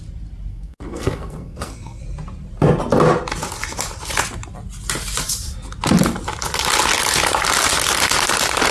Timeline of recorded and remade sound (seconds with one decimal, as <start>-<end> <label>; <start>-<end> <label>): 0.0-0.5 recorded; 0.5-2.0 remade; 2.0-8.7 recorded